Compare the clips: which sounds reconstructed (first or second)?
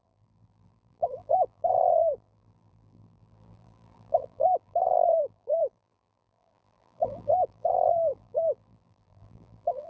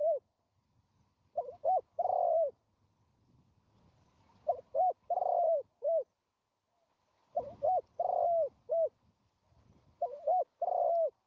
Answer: first